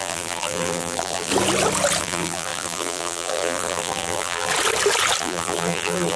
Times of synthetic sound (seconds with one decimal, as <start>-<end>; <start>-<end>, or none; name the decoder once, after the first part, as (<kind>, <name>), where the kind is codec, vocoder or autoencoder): 0.0-1.3 (vocoder, BigVGAN v2); 2.0-4.5; 5.2-6.2